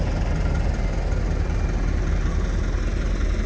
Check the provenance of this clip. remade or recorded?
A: recorded